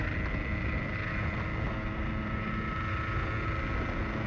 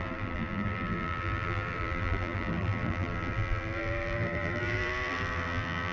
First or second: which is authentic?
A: first